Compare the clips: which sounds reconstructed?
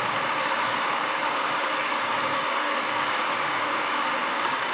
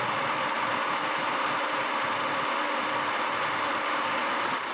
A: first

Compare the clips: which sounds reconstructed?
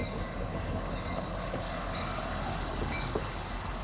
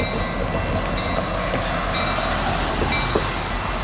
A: first